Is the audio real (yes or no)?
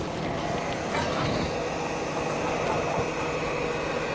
yes